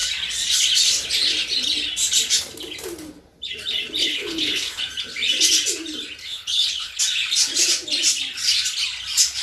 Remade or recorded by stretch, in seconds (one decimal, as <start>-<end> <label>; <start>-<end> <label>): 0.0-4.0 recorded; 4.0-4.8 remade; 4.8-6.2 recorded; 6.2-7.0 remade; 7.0-9.4 recorded